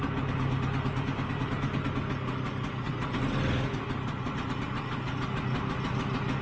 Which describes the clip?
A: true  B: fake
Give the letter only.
A